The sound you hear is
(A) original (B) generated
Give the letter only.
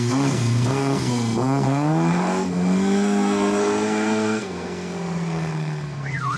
B